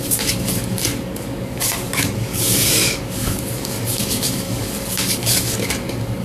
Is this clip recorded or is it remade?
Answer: remade